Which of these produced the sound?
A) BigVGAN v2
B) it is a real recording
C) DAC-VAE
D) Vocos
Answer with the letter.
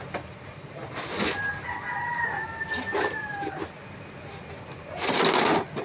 B